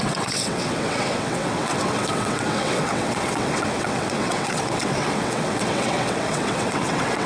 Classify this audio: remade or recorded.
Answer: remade